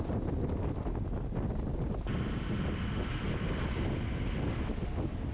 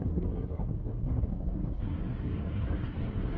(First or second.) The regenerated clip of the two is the second